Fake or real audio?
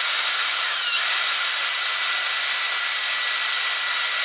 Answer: real